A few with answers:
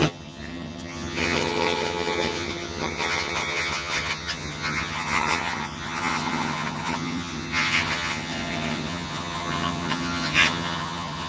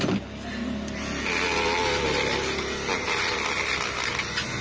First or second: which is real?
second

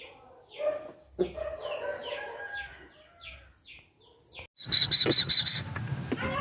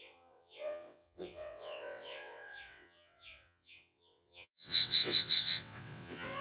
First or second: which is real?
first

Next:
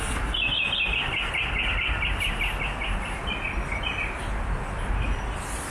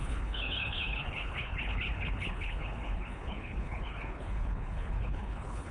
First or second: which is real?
first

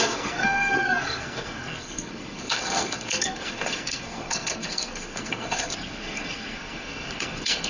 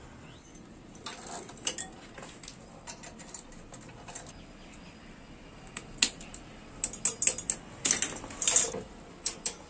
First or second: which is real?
second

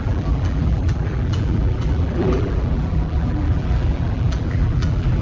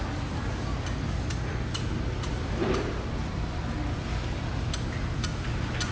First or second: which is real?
second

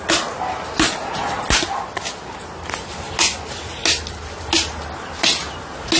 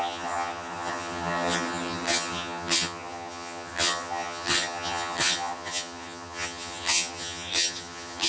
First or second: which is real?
first